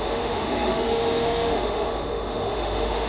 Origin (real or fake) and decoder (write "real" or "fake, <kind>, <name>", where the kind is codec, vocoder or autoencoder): fake, autoencoder, DAC-VAE